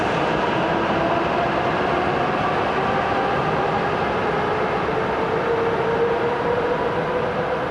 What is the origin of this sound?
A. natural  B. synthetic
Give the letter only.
A